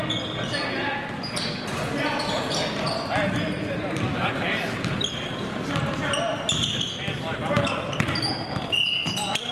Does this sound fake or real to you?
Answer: real